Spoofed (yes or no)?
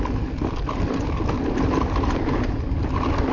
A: no